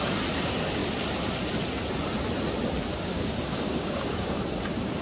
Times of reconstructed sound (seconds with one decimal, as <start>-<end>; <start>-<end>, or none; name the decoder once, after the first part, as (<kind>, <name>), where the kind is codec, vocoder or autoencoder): 2.9-4.4 (codec, DAC)